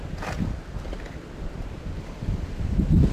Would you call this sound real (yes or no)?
yes